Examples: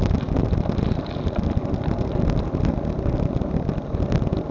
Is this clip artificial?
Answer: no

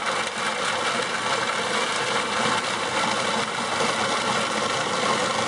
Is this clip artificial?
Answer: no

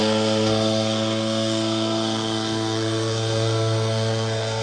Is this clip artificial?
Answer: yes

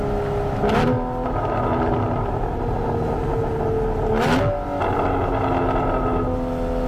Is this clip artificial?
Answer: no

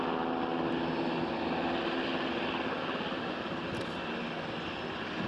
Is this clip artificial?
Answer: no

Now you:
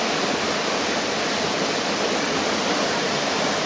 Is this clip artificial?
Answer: no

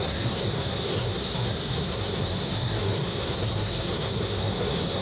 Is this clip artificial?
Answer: yes